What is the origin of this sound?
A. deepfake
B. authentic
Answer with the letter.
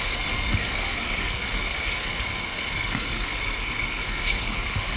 A